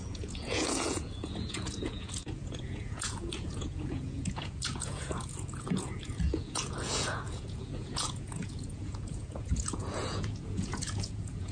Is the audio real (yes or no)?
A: no